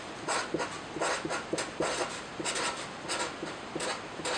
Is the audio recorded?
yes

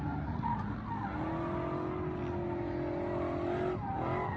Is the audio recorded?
yes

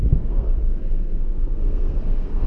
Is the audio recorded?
no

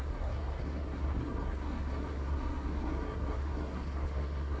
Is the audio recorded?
no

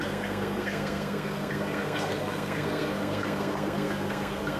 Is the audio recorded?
no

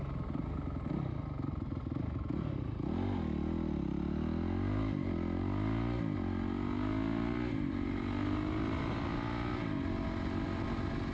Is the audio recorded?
yes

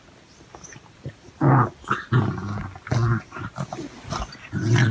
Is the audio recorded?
yes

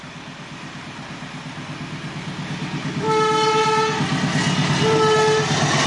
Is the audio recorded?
yes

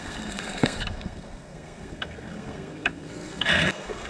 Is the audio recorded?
no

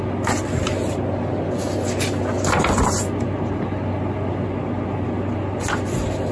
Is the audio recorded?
yes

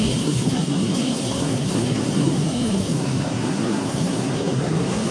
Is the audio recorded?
no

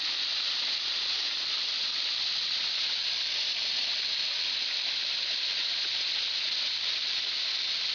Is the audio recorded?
yes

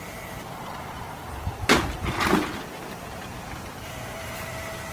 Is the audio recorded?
yes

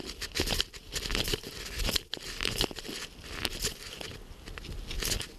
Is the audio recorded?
yes